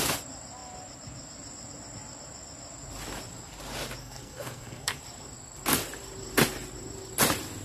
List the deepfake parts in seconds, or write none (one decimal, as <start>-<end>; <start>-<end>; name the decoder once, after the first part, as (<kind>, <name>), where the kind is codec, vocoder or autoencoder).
4.0-5.0 (codec, SNAC)